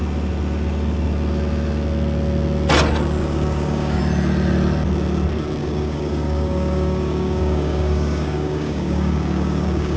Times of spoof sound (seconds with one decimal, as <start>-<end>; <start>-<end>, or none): 3.2-4.0; 5.6-10.0